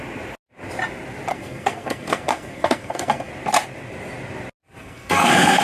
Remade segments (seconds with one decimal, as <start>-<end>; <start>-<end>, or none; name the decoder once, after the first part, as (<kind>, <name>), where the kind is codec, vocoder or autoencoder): 1.3-3.3 (codec, SNAC); 4.8-5.6